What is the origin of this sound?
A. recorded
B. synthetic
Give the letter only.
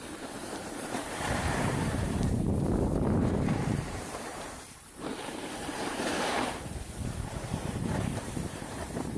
B